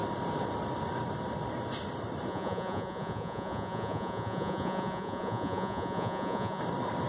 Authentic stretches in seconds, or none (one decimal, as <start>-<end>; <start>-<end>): 0.0-2.3; 6.6-7.1